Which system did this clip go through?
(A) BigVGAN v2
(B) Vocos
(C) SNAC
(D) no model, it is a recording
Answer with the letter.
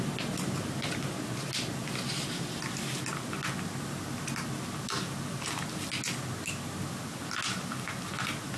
D